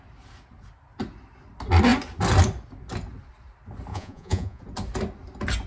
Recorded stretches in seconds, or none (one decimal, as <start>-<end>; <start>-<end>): 0.0-3.9; 4.6-5.7